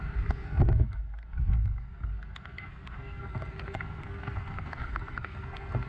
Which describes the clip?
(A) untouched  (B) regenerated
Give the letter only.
B